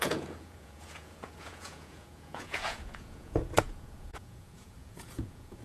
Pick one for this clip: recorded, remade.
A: remade